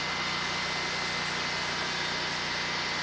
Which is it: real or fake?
real